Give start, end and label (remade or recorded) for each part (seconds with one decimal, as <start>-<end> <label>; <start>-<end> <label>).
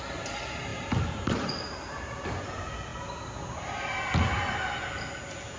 0.0-0.7 recorded; 0.7-1.5 remade; 1.5-5.6 recorded